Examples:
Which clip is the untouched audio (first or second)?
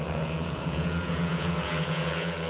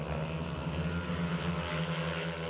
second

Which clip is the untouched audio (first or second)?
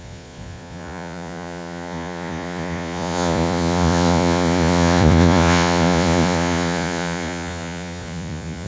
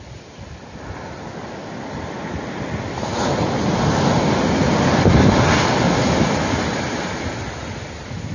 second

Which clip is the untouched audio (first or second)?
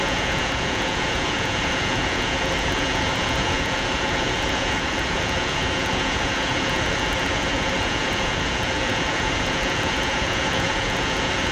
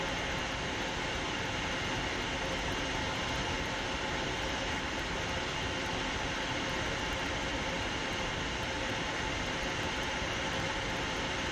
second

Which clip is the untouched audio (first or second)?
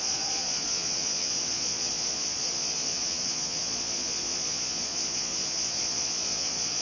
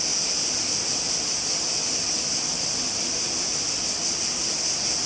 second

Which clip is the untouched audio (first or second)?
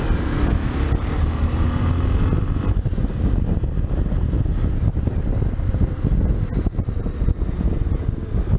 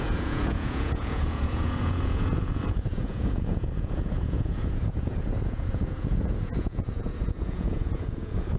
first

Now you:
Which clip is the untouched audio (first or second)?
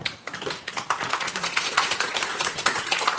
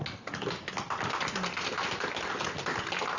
second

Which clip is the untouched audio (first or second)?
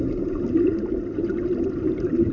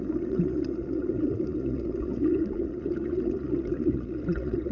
first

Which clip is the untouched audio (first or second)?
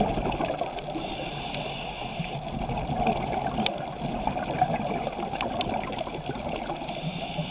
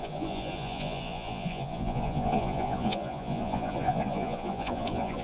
first